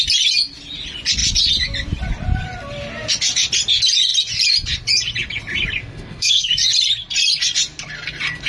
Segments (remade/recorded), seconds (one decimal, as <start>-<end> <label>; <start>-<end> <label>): 0.0-5.8 recorded; 5.8-6.5 remade; 6.5-8.5 recorded